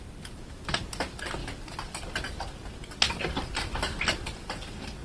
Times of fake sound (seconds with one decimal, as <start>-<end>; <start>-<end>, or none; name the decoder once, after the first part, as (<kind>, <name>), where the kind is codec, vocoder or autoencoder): 1.4-4.4 (vocoder, BigVGAN v2)